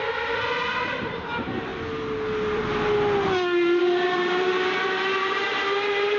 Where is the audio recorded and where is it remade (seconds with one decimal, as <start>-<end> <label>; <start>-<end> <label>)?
0.0-1.7 remade; 1.7-3.8 recorded; 3.8-6.2 remade